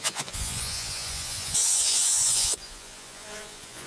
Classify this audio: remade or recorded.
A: remade